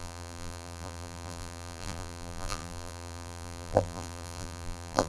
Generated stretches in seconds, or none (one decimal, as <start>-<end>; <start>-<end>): 0.0-5.1